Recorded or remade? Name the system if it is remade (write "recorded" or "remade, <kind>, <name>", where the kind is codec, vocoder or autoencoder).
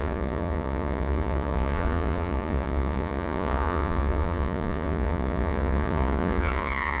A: remade, vocoder, Vocos